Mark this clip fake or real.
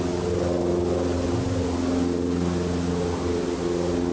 real